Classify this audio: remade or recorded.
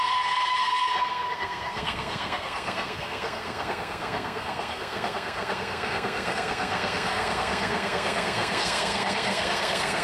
remade